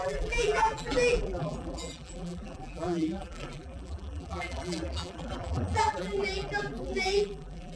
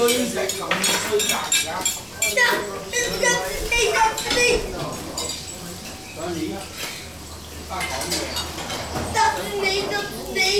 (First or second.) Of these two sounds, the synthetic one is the first